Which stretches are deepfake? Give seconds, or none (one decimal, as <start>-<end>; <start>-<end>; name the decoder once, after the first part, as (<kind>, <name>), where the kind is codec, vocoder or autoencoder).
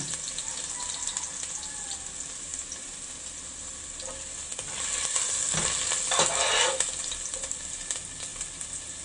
none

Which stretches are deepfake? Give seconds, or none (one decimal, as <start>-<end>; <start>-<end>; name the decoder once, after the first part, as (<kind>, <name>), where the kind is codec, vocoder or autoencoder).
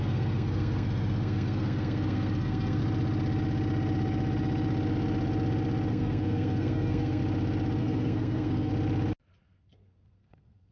0.0-2.8 (codec, SNAC); 5.9-7.2; 7.8-8.7; 9.4-10.7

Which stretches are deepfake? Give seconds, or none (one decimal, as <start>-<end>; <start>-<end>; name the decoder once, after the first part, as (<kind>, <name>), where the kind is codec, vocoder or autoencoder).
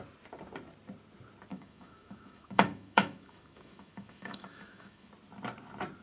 1.5-5.1 (autoencoder, DAC-VAE)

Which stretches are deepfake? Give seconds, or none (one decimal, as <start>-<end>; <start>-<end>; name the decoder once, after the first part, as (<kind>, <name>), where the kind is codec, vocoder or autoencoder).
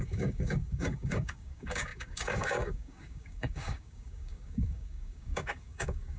0.0-6.2 (codec, DAC)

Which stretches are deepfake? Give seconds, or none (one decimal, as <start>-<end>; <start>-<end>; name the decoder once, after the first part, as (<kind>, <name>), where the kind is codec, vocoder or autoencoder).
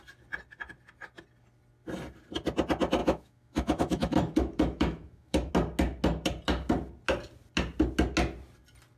3.0-5.5 (autoencoder, DAC-VAE)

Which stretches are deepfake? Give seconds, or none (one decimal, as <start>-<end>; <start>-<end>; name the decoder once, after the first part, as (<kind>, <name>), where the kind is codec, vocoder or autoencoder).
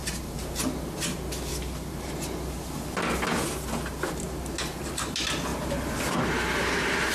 0.0-0.6 (vocoder, BigVGAN v2); 1.5-2.1; 5.5-7.1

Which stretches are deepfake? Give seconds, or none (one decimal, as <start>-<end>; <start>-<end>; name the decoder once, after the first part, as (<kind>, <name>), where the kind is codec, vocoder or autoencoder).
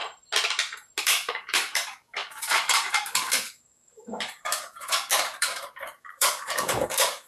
1.0-7.3 (codec, DAC)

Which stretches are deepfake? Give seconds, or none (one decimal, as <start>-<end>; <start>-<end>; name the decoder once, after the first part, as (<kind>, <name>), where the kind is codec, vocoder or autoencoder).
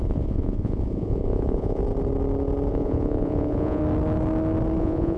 0.0-1.8 (vocoder, Vocos); 2.7-3.8; 4.8-5.2